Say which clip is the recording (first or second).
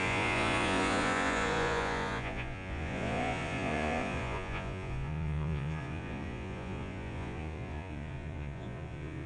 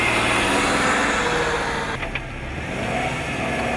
second